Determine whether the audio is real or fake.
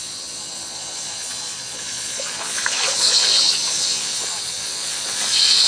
fake